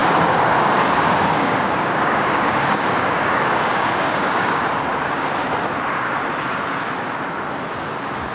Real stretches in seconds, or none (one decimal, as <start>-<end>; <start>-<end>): 4.6-8.3